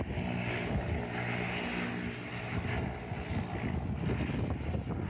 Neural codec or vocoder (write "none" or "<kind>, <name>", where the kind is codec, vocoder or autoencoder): none